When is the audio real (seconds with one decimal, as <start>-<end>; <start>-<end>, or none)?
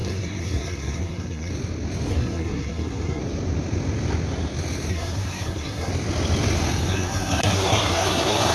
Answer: 1.5-2.1; 3.2-4.9; 5.9-6.9